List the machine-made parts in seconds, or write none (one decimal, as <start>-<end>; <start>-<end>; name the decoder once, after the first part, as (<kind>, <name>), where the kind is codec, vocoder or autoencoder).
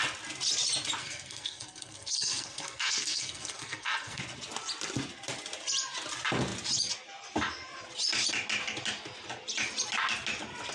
1.0-4.2 (codec, SNAC)